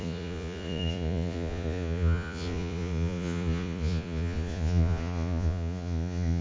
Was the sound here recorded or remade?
remade